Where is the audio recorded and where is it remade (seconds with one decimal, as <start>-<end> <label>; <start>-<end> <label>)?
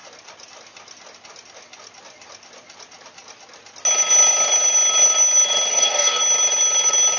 0.0-5.7 recorded; 5.7-6.2 remade; 6.2-7.2 recorded